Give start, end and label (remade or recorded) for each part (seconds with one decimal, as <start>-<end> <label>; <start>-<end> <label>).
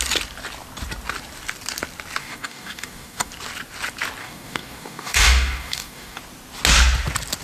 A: 0.0-2.2 recorded; 2.2-3.3 remade; 3.3-4.2 recorded; 4.2-6.2 remade; 6.2-7.4 recorded